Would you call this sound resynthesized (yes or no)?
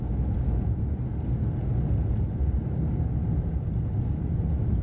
no